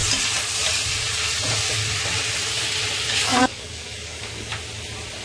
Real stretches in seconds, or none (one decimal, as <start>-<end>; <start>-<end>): 0.0-3.1; 4.5-5.2

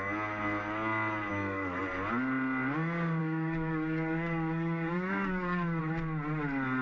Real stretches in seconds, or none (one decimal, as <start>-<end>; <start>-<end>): 0.0-1.3; 1.8-3.2; 5.8-6.8

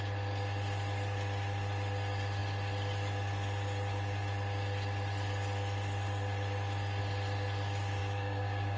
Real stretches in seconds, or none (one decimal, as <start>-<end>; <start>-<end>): 0.0-8.0

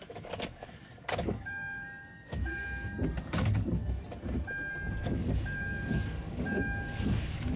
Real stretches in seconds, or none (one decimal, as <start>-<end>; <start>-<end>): 2.6-3.3; 3.8-4.9

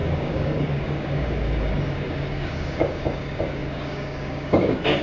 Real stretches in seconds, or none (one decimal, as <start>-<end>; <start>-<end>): none